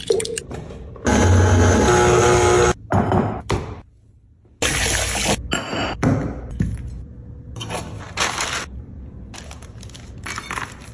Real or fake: real